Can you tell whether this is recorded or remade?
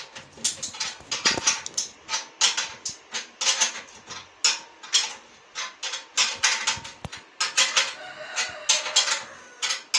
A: recorded